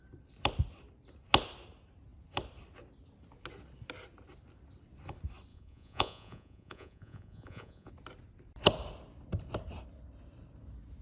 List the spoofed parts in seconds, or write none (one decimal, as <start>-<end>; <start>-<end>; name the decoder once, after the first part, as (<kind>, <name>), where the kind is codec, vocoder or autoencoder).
5.5-7.9 (vocoder, Vocos)